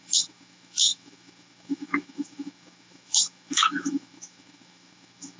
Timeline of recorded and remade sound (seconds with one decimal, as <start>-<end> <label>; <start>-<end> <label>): 0.0-5.4 remade